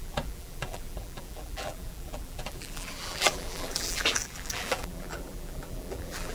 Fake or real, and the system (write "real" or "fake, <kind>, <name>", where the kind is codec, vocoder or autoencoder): fake, vocoder, BigVGAN v2